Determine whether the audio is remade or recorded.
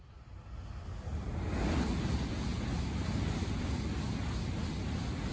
recorded